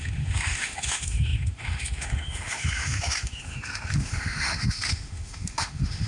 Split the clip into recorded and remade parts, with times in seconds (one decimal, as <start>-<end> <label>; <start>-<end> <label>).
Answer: 0.0-6.1 remade